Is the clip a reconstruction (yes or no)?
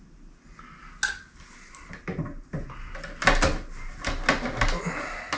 no